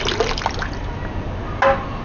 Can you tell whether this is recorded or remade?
recorded